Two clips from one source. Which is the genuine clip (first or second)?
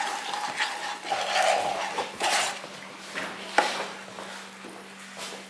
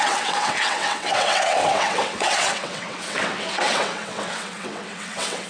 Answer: first